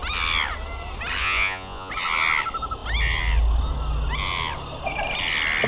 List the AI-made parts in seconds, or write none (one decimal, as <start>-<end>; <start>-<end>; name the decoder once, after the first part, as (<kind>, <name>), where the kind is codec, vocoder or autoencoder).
1.2-1.9 (vocoder, Vocos)